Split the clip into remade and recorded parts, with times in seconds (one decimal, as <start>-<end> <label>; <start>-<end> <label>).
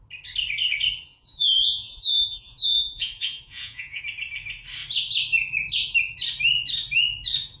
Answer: 0.0-1.1 recorded; 1.1-4.0 remade; 4.0-7.6 recorded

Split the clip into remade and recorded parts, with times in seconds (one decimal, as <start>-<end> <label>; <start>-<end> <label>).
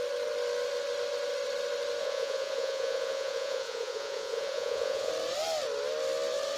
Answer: 0.0-2.0 recorded; 2.0-5.1 remade; 5.1-6.6 recorded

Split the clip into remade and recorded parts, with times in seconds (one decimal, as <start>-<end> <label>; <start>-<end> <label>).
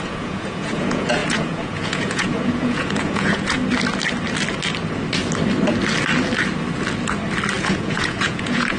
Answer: 0.0-3.6 remade; 3.6-7.6 recorded; 7.6-8.8 remade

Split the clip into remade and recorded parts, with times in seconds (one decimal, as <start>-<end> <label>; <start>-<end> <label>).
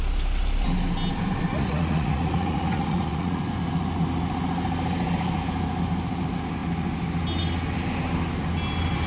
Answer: 0.0-1.5 recorded; 1.5-3.4 remade; 3.4-9.1 recorded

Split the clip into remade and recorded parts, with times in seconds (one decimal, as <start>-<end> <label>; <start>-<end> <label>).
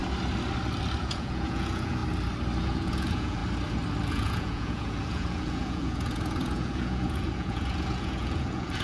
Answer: 0.0-1.0 recorded; 1.0-2.0 remade; 2.0-2.6 recorded; 2.6-3.4 remade; 3.4-4.1 recorded; 4.1-8.8 remade